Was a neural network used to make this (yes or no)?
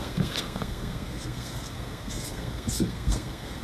yes